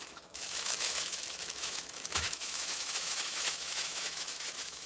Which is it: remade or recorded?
remade